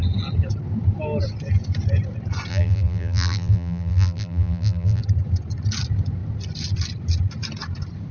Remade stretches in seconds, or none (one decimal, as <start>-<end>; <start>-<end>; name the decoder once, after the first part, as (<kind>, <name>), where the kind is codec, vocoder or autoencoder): 2.5-5.0 (vocoder, BigVGAN v2)